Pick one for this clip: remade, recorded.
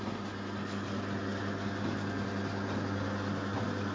recorded